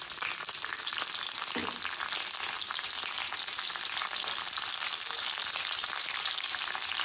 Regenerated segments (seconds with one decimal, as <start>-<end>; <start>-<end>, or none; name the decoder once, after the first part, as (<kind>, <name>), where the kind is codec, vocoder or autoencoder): none